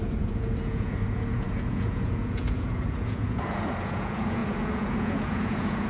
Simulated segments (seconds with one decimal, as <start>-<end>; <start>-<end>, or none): 0.0-5.9